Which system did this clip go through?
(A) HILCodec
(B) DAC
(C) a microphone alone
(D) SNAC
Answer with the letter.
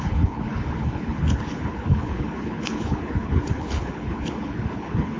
A